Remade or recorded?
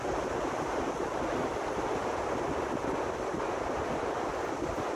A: recorded